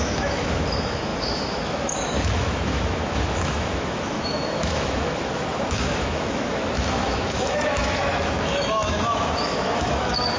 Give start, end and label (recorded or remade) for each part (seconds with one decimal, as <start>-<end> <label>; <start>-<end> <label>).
0.0-10.4 remade